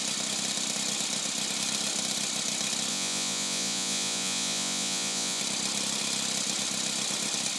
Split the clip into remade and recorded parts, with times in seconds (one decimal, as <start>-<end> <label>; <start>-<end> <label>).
0.0-2.9 recorded; 2.9-5.4 remade; 5.4-7.6 recorded